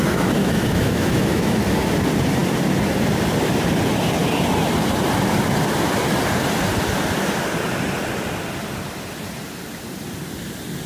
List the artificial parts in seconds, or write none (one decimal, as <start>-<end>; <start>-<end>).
0.4-1.6